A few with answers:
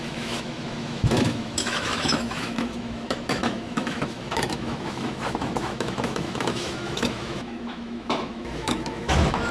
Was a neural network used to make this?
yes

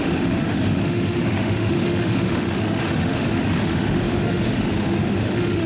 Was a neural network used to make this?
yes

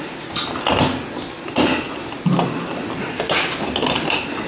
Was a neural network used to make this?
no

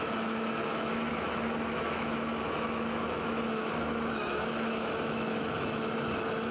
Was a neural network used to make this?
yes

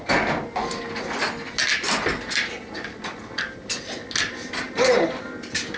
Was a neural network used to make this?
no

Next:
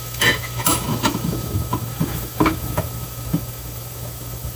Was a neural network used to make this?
yes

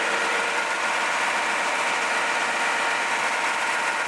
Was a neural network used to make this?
no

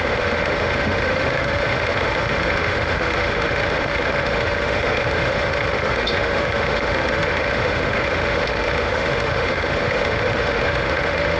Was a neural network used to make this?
yes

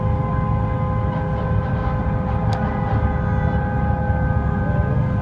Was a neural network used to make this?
no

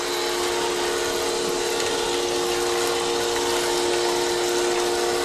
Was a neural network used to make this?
no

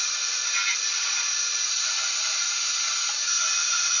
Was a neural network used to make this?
no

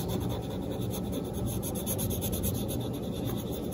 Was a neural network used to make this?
no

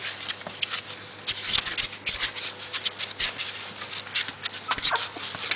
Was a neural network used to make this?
no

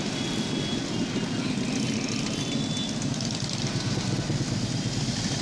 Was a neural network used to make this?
no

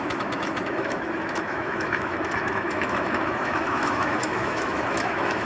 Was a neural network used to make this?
yes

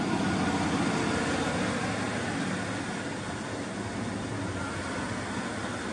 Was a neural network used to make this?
no